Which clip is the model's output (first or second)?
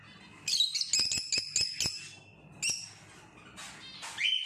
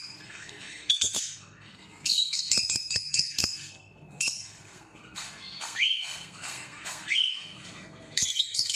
second